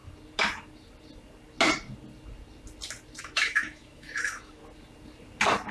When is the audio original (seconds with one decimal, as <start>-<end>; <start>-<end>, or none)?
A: 0.0-3.2; 4.6-5.7